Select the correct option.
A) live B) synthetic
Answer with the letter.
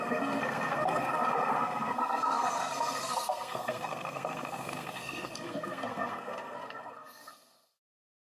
B